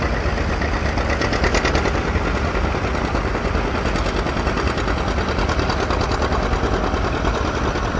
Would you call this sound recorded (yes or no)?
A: yes